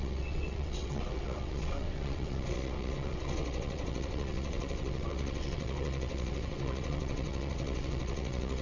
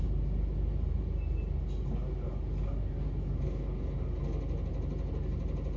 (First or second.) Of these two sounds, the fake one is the first